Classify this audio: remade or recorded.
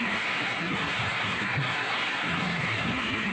remade